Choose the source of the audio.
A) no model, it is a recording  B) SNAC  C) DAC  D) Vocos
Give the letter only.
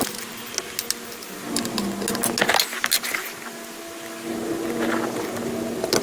A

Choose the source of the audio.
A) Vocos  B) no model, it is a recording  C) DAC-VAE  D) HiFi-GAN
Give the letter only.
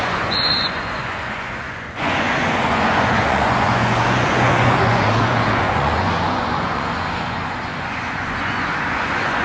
A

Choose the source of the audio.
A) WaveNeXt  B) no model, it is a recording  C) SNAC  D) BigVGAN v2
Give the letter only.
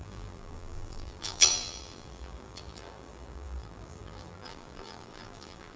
D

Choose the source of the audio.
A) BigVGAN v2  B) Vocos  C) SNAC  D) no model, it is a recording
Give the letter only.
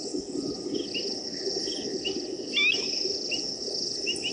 D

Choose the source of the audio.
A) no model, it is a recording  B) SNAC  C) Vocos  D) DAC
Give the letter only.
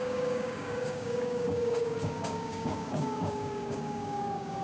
D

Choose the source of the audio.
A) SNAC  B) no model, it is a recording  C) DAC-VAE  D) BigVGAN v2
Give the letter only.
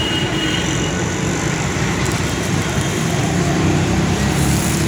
D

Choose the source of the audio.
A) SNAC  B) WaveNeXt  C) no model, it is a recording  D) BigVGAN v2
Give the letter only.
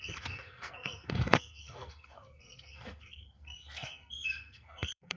A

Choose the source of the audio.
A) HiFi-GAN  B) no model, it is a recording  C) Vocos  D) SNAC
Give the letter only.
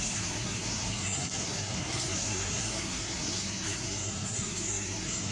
D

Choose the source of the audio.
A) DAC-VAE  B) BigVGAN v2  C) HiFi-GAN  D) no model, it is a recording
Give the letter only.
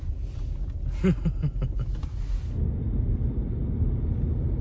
D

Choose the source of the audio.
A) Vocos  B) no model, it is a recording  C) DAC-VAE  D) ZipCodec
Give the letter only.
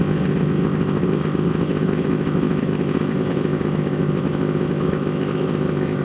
D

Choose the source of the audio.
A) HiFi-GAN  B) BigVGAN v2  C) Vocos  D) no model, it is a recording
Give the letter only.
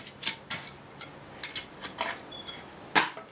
D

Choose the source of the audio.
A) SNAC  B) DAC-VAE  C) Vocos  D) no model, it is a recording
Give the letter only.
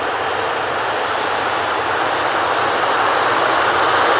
D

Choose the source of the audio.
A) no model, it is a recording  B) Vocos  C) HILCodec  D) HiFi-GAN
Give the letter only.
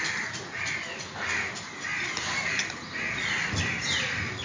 A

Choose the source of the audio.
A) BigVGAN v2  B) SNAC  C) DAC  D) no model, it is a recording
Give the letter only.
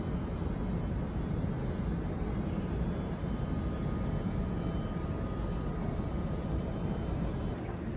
D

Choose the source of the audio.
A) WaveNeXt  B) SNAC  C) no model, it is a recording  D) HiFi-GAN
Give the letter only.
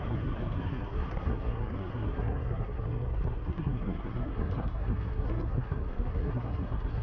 B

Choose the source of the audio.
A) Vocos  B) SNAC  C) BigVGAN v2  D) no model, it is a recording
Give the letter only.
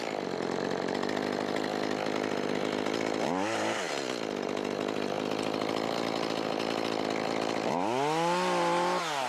D